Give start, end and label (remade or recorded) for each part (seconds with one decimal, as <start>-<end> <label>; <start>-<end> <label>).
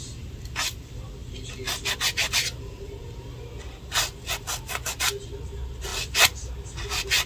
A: 0.0-7.3 recorded